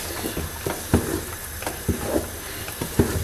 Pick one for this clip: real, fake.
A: real